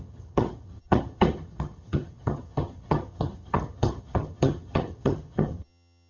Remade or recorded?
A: remade